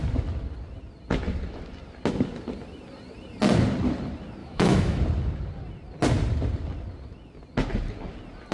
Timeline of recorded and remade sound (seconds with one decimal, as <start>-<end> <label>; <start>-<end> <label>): 0.0-4.4 recorded; 4.4-5.0 remade; 5.0-8.5 recorded